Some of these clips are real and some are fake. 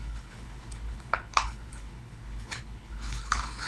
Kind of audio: fake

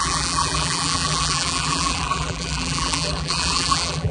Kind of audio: fake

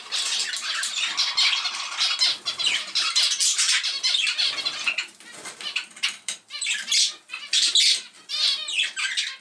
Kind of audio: real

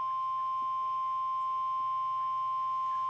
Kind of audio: real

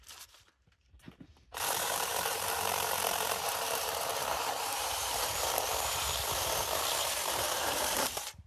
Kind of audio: fake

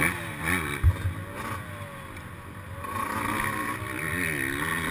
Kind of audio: real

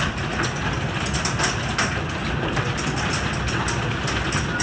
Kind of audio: real